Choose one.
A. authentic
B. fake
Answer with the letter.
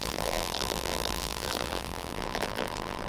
B